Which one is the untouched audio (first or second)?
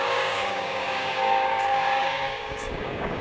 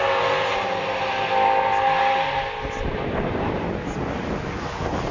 second